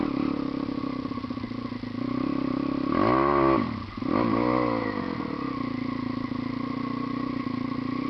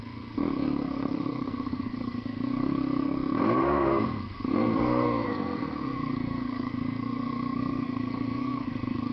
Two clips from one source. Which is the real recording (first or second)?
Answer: first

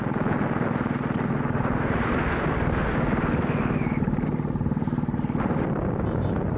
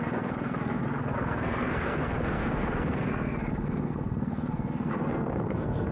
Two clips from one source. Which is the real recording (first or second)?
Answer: first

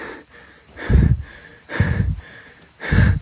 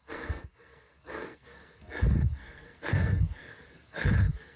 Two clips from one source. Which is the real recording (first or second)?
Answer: first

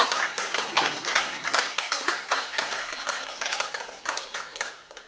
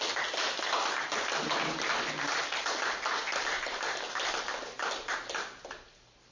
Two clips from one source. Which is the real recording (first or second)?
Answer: second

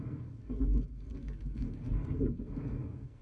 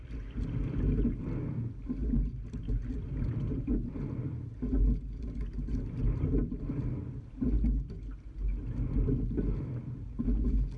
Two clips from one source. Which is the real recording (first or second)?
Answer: second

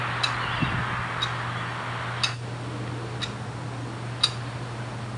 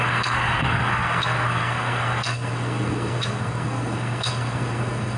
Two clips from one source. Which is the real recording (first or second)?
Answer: first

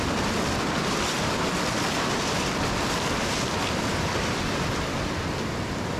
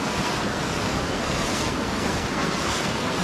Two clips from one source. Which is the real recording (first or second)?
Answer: first